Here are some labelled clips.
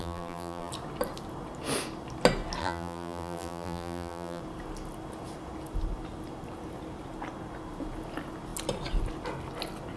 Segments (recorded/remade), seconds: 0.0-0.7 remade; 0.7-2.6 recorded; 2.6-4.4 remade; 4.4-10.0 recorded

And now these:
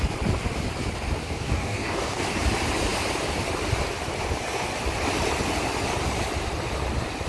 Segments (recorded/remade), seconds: 0.0-1.2 recorded; 1.2-2.2 remade; 2.2-7.3 recorded

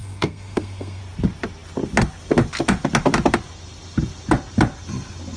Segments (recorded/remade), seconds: 0.0-1.0 remade; 1.0-5.4 recorded